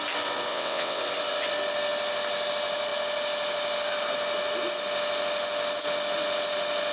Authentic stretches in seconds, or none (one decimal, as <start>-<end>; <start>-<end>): 0.0-0.5; 1.0-6.9